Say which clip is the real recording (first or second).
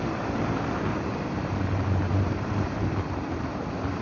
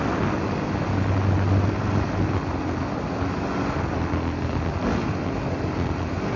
second